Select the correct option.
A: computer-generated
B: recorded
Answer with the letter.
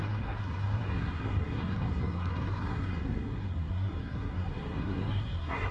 A